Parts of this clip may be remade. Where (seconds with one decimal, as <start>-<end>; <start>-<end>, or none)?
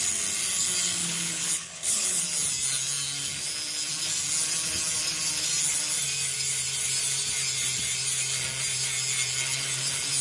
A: 1.0-2.2